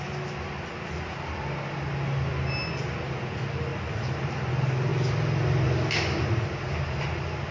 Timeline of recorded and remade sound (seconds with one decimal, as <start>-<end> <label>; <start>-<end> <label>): 0.0-7.5 recorded